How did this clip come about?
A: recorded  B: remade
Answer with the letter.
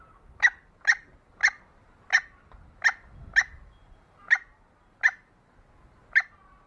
A